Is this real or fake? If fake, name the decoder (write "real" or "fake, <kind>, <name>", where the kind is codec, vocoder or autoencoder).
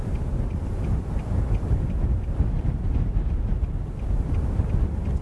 real